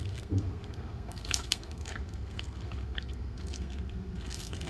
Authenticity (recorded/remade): remade